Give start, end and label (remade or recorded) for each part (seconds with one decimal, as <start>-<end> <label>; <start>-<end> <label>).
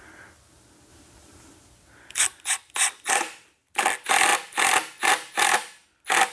0.0-6.3 recorded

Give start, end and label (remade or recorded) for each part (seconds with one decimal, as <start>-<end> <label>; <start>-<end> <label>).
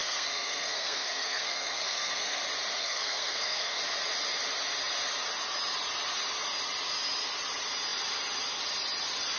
0.0-2.4 remade; 2.4-2.8 recorded; 2.8-3.8 remade; 3.8-9.4 recorded